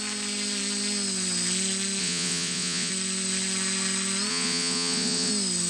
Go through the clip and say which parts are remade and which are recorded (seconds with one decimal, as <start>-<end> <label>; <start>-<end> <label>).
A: 0.0-2.0 recorded; 2.0-2.9 remade; 2.9-4.3 recorded; 4.3-5.3 remade; 5.3-5.7 recorded